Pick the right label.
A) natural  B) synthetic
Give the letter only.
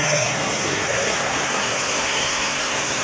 B